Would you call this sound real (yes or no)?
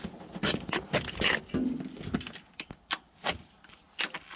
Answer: yes